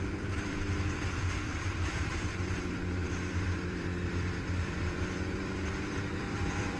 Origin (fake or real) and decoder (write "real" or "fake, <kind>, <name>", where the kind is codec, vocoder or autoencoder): fake, vocoder, BigVGAN v2